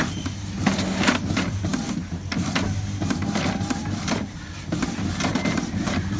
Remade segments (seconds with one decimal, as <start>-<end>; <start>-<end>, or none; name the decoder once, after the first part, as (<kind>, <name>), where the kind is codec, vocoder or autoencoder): none